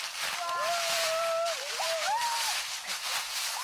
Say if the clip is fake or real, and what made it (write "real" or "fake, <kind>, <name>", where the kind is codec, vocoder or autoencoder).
fake, vocoder, BigVGAN v2